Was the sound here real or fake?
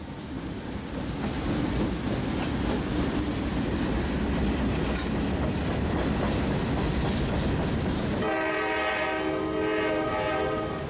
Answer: real